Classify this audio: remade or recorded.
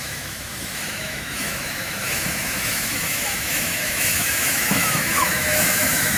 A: remade